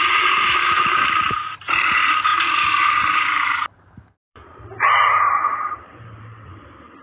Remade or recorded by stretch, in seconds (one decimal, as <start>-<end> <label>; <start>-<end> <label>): 0.0-7.0 remade